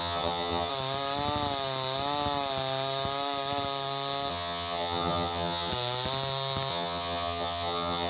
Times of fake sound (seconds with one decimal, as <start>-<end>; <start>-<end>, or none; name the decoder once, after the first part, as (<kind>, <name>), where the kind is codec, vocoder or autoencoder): 0.0-0.7 (vocoder, HiFi-GAN); 4.3-5.7; 6.7-8.1